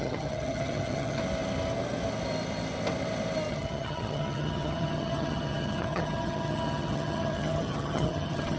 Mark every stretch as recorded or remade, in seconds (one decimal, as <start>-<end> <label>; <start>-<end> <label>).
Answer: 0.0-1.2 remade; 1.2-3.5 recorded; 3.5-8.6 remade